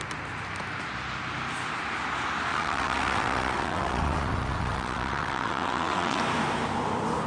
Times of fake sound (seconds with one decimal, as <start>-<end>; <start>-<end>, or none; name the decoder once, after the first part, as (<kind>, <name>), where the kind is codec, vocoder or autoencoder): 2.5-6.2 (vocoder, WaveNeXt)